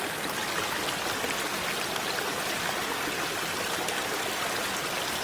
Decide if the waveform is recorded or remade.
recorded